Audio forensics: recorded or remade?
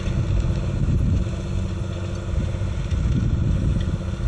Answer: recorded